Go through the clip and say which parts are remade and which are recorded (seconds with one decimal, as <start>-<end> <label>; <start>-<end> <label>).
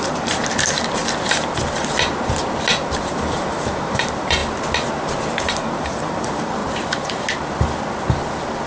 0.0-1.0 remade; 1.0-3.0 recorded; 3.0-4.4 remade; 4.4-5.4 recorded; 5.4-6.6 remade; 6.6-8.7 recorded